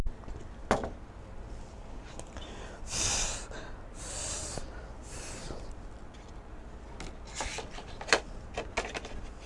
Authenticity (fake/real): real